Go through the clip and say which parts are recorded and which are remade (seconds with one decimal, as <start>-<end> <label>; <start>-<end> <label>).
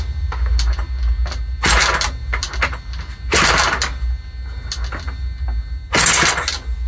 0.0-6.9 recorded